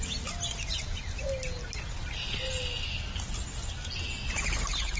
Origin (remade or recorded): recorded